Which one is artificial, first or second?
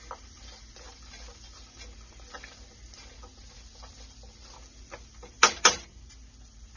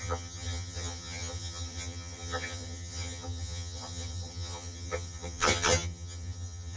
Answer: second